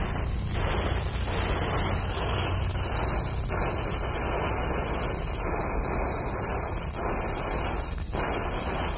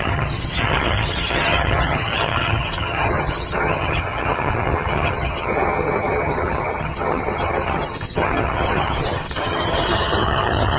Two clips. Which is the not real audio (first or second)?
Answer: second